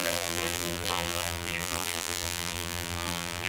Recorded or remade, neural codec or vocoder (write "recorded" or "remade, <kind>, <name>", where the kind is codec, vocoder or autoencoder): remade, vocoder, BigVGAN v2